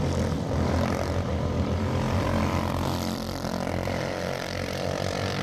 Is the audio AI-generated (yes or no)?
yes